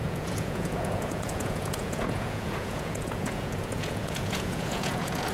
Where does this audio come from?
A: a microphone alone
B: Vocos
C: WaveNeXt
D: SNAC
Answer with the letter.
B